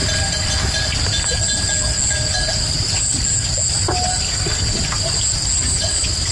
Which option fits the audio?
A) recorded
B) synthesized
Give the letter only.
A